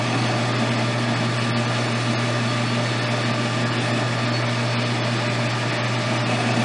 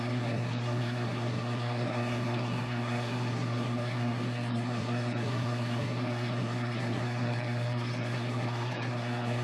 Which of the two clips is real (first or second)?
first